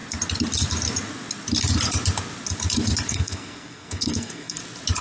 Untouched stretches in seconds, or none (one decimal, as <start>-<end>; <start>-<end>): 0.0-3.1; 4.6-5.0